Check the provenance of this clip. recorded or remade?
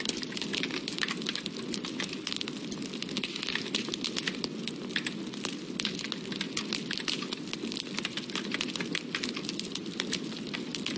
recorded